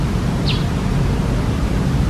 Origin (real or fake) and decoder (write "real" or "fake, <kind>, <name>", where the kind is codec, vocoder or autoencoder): real